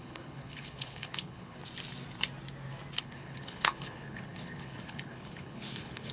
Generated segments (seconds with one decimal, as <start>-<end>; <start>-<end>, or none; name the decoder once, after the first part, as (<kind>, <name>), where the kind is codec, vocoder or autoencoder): 0.0-1.6 (codec, HILCodec); 3.0-6.1